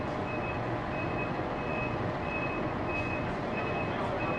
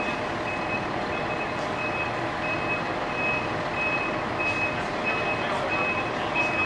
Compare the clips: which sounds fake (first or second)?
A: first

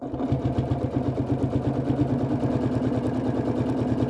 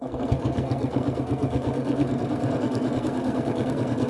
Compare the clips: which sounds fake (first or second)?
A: second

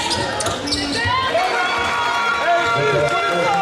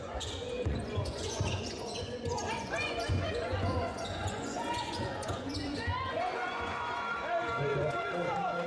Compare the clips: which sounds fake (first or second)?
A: second